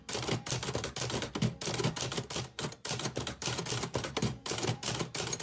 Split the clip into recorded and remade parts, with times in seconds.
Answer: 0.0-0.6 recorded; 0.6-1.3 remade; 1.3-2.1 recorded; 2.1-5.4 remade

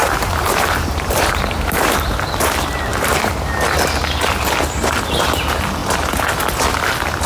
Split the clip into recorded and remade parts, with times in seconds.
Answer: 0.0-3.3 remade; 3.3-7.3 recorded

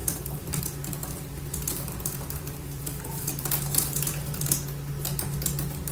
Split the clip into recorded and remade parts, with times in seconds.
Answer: 0.0-0.6 remade; 0.6-1.0 recorded; 1.0-3.5 remade; 3.5-5.9 recorded

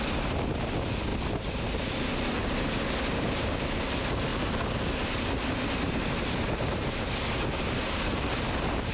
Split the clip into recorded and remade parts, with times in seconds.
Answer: 0.0-7.8 recorded; 7.8-8.9 remade

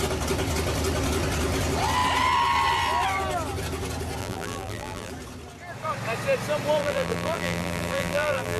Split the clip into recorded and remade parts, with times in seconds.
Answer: 0.0-4.2 recorded; 4.2-5.1 remade; 5.1-6.8 recorded; 6.8-8.6 remade

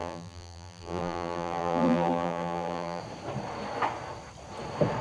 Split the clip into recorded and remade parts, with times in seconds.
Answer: 0.0-3.0 remade; 3.0-5.0 recorded